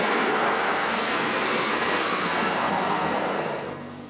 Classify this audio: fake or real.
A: fake